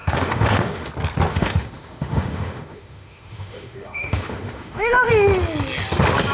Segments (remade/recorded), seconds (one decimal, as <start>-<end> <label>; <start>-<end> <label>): 0.0-0.9 remade; 0.9-1.3 recorded; 1.3-5.1 remade; 5.1-6.3 recorded